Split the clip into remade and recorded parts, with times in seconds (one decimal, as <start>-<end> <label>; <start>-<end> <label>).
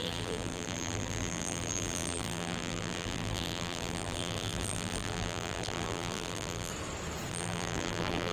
0.0-6.7 remade; 6.7-7.3 recorded; 7.3-8.3 remade